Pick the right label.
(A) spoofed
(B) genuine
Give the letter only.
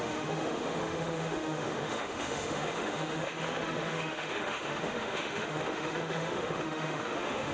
A